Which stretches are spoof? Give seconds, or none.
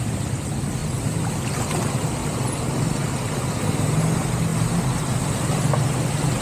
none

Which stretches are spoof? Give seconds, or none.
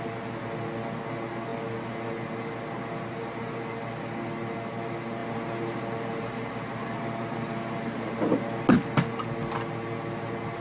none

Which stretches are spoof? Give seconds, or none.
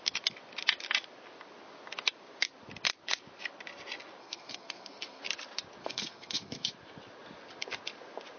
4.2-5.2 (codec, SNAC); 5.8-6.7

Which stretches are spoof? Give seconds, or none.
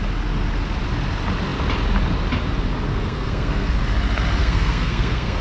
2.9-3.7 (codec, SNAC); 4.4-5.4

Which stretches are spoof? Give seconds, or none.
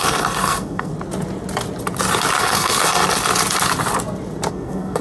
0.0-0.9 (codec, SNAC); 2.4-3.0; 4.5-5.0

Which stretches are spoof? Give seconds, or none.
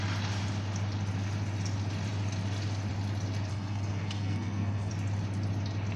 3.5-4.9 (codec, SNAC)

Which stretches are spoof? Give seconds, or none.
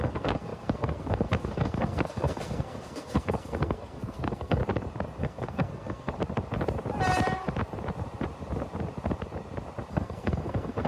0.0-4.6 (codec, SNAC); 5.2-6.1; 9.9-10.9